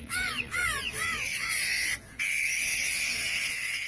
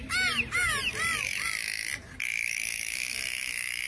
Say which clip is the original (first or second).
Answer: second